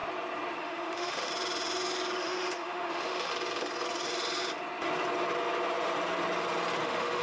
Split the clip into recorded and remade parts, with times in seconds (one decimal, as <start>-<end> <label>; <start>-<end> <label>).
0.0-0.6 recorded; 0.6-1.3 remade; 1.3-2.2 recorded; 2.2-3.3 remade; 3.3-6.8 recorded; 6.8-7.2 remade